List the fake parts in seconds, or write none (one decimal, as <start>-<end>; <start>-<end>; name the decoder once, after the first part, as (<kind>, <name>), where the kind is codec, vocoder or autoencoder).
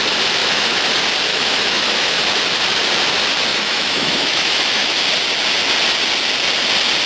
0.4-0.9 (autoencoder, DAC-VAE); 1.3-2.4; 3.5-5.0